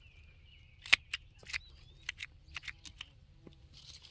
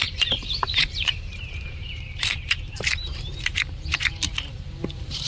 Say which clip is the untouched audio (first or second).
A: first